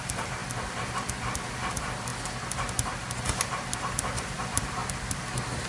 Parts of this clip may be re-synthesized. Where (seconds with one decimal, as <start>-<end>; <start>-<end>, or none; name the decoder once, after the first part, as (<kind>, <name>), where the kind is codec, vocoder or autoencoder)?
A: 0.0-2.1 (vocoder, BigVGAN v2); 3.7-4.8